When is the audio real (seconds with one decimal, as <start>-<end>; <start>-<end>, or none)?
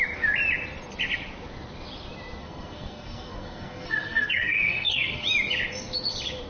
0.0-2.4; 5.2-6.5